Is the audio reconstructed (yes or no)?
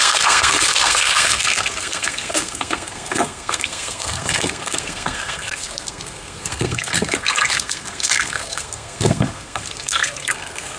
yes